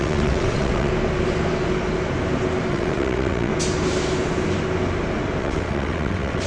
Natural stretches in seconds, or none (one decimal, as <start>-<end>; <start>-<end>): 0.9-2.7; 3.5-5.4